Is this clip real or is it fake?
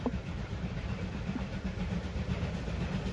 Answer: fake